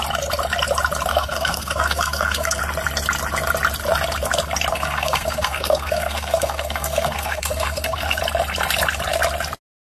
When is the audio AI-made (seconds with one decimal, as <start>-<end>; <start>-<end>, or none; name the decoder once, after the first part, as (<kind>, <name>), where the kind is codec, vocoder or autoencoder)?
1.1-2.6 (codec, SNAC); 4.7-8.2